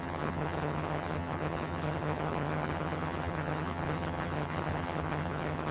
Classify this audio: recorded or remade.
remade